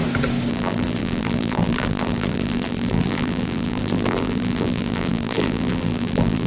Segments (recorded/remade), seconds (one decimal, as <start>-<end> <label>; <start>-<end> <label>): 0.0-0.5 recorded; 0.5-6.5 remade